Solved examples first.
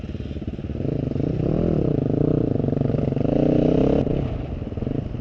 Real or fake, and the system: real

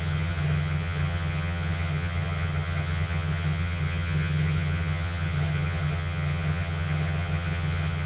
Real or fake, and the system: fake, vocoder, HiFi-GAN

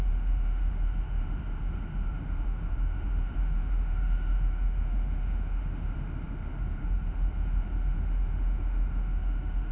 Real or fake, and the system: fake, autoencoder, DAC-VAE